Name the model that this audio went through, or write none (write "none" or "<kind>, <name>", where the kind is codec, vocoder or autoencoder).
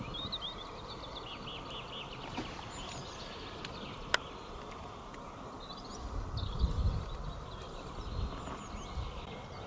none